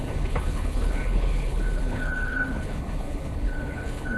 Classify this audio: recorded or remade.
remade